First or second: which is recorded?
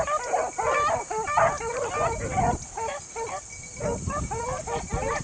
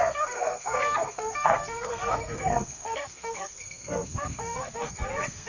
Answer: first